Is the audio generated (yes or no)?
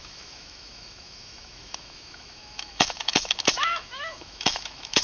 yes